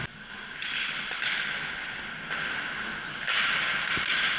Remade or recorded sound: recorded